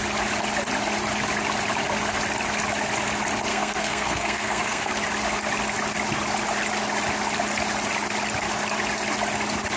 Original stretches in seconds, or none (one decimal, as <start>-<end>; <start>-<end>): 0.0-3.5; 4.9-9.8